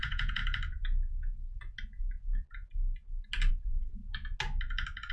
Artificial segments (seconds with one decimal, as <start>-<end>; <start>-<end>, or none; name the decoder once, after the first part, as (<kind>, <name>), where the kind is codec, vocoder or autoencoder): 0.0-0.4 (vocoder, Vocos); 3.5-4.0